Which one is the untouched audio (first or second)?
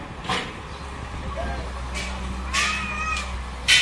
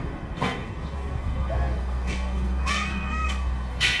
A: first